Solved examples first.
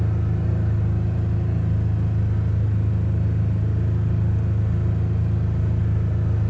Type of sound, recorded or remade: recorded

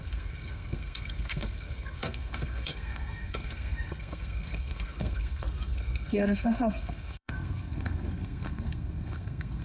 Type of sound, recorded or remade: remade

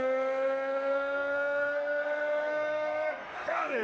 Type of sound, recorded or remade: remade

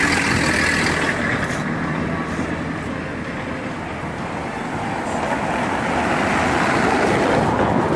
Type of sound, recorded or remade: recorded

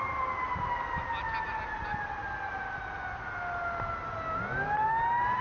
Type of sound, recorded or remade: recorded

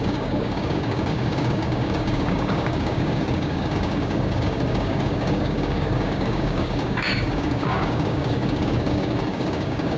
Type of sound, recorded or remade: remade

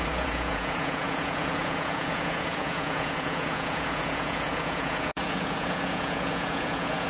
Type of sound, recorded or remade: remade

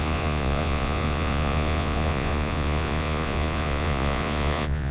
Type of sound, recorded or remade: remade